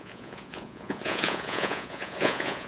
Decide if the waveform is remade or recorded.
remade